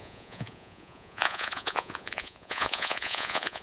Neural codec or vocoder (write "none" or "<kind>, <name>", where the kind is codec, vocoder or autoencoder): vocoder, Vocos